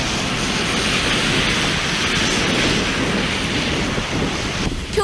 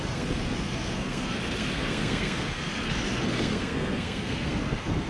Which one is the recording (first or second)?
first